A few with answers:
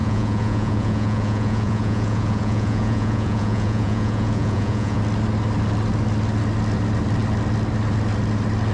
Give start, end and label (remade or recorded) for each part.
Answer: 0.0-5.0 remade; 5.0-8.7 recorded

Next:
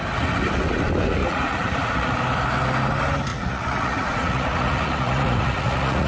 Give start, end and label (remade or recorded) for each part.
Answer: 0.0-1.2 recorded; 1.2-2.2 remade; 2.2-3.3 recorded; 3.3-6.1 remade

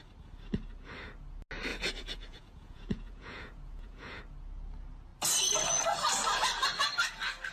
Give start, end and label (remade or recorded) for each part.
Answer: 0.0-1.7 recorded; 1.7-4.2 remade; 4.2-7.5 recorded

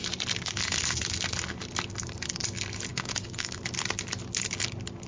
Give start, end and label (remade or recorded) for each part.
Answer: 0.0-2.9 recorded; 2.9-3.6 remade; 3.6-5.1 recorded

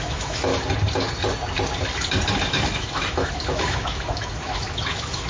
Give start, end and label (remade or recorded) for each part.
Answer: 0.0-0.5 remade; 0.5-2.5 recorded; 2.5-5.3 remade

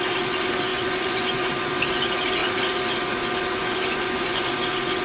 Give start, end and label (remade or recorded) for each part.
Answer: 0.0-0.7 recorded; 0.7-1.5 remade; 1.5-3.6 recorded; 3.6-4.5 remade; 4.5-5.0 recorded

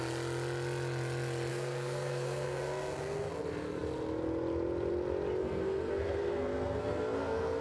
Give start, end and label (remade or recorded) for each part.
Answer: 0.0-1.5 recorded; 1.5-3.3 remade; 3.3-5.4 recorded; 5.4-7.6 remade